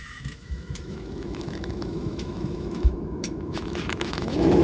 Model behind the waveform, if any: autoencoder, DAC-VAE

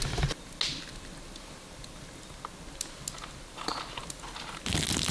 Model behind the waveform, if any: none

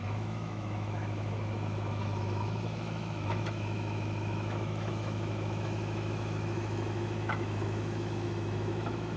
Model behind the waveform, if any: autoencoder, DAC-VAE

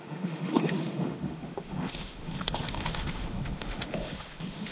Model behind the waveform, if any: autoencoder, DAC-VAE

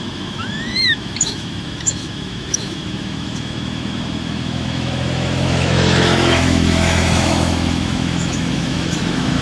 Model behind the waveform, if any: autoencoder, DAC-VAE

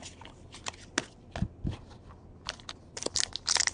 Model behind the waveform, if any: none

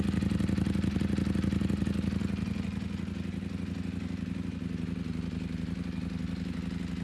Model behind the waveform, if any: none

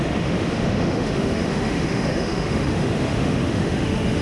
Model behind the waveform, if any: autoencoder, DAC-VAE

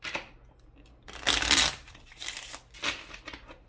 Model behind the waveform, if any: none